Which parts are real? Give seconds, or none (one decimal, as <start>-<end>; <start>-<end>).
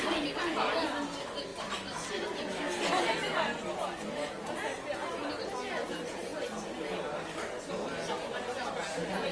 0.0-9.3